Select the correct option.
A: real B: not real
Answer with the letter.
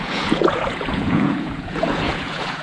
B